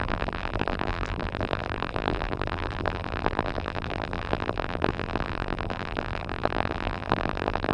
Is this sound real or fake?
fake